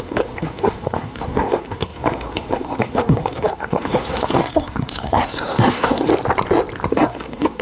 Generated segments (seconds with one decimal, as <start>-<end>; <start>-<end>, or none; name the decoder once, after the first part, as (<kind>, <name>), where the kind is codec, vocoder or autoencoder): 0.0-6.1 (codec, SNAC); 6.9-7.6